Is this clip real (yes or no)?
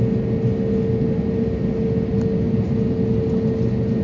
yes